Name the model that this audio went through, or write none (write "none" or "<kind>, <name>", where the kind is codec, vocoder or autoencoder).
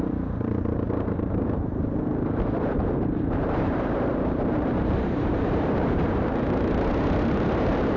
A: vocoder, BigVGAN v2